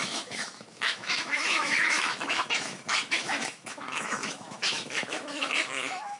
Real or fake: fake